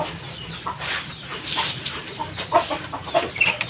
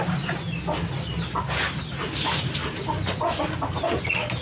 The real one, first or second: second